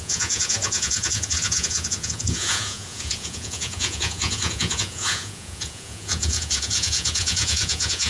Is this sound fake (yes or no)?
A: yes